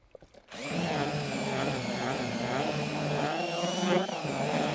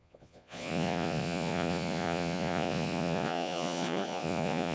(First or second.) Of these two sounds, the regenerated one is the second